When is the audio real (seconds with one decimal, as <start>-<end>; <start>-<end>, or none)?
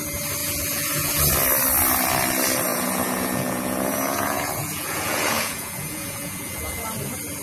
0.0-0.4; 1.3-2.7; 6.8-7.4